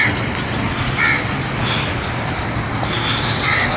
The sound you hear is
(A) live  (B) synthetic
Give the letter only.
A